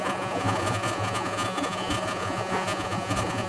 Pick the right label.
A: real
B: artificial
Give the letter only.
B